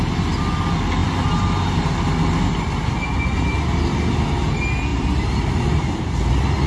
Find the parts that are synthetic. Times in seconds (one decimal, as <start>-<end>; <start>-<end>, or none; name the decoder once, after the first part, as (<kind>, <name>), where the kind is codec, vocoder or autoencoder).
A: 4.9-6.0 (vocoder, BigVGAN v2)